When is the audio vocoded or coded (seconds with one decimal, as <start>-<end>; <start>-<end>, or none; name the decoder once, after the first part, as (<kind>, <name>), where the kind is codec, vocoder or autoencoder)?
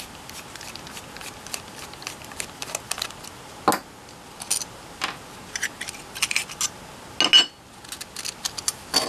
none